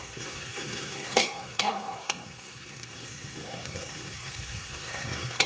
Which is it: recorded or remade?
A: remade